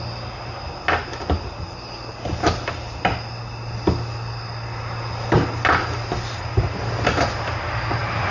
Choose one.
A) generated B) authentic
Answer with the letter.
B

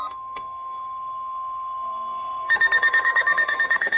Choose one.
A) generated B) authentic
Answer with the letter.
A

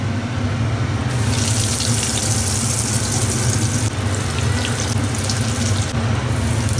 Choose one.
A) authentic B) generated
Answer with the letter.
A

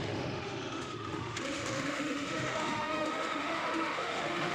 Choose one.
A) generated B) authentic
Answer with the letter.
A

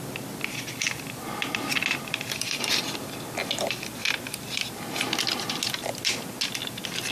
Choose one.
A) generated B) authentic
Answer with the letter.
B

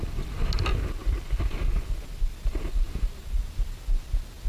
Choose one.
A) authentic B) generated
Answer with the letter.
A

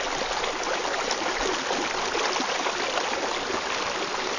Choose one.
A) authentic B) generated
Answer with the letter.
A